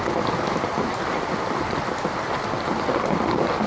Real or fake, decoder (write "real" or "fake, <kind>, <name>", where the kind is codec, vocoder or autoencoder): real